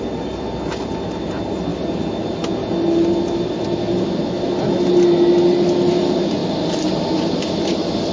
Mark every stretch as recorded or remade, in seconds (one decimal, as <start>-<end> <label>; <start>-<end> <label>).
0.0-8.1 recorded